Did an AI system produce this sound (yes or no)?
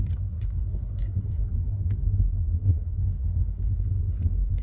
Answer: yes